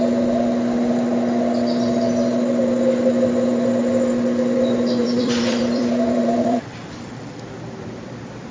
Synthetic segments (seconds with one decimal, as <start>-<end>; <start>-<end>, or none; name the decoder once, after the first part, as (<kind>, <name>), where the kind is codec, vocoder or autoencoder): 5.0-7.1 (vocoder, BigVGAN v2)